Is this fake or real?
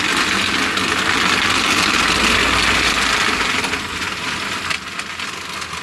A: real